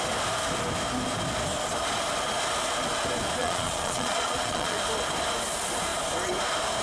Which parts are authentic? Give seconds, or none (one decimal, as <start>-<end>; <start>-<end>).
0.0-3.4; 4.8-6.8